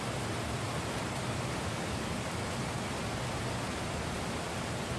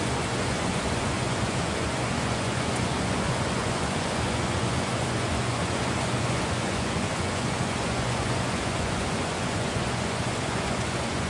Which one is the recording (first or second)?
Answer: first